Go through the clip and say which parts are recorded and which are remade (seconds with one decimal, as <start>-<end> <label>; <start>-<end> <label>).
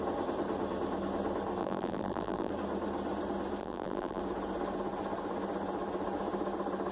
0.0-1.6 recorded; 1.6-2.5 remade; 2.5-3.6 recorded; 3.6-4.2 remade; 4.2-6.9 recorded